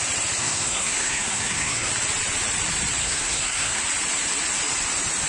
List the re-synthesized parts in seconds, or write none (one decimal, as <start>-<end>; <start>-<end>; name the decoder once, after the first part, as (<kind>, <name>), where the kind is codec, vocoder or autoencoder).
0.4-1.9 (codec, SNAC); 3.0-3.8

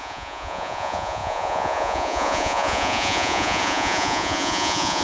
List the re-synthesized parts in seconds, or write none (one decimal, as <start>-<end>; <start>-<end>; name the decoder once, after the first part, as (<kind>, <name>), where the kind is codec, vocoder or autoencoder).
0.0-5.0 (vocoder, Vocos)

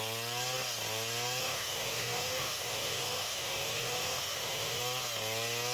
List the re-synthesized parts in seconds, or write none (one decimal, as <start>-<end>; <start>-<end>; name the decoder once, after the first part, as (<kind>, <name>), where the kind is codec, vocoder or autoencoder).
1.4-4.8 (autoencoder, DAC-VAE)

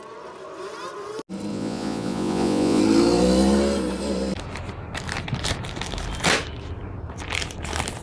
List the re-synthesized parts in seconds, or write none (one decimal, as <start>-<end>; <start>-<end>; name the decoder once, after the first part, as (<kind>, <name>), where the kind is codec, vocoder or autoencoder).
1.5-2.8 (vocoder, Vocos)

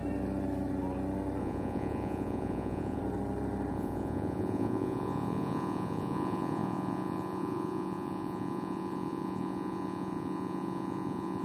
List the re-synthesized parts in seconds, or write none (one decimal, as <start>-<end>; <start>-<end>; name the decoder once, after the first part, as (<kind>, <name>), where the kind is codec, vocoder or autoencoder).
1.4-3.0 (vocoder, Vocos); 3.7-11.4

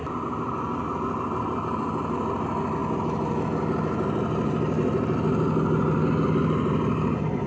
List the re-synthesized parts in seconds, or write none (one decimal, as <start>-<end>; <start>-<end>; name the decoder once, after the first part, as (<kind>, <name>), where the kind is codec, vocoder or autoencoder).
none

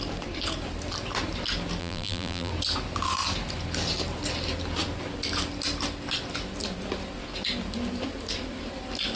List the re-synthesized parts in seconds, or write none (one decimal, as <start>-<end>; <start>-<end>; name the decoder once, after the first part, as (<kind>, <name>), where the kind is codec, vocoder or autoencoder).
1.8-2.5 (vocoder, BigVGAN v2)

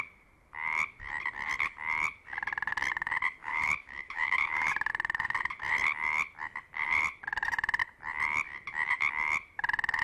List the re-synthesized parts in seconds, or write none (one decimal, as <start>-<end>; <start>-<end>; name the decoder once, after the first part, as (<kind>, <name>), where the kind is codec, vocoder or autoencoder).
3.4-4.9 (autoencoder, DAC-VAE)